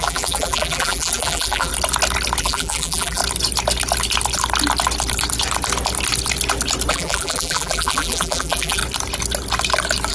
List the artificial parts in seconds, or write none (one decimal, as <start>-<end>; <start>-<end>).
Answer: 0.0-1.7; 2.4-3.2; 6.9-8.8